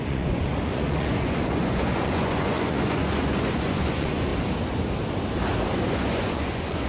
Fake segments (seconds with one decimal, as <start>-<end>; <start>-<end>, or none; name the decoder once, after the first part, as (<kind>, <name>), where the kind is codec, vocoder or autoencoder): 0.0-4.3 (vocoder, Vocos); 5.7-6.9